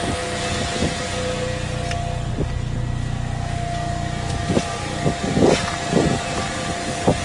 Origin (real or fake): real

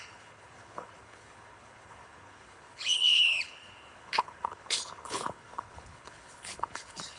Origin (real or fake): fake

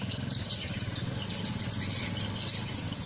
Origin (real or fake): real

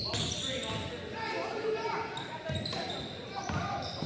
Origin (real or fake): real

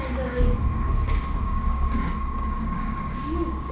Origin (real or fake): fake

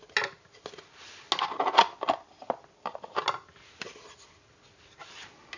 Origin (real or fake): real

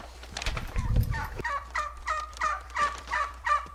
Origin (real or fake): fake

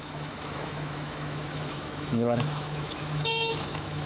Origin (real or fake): fake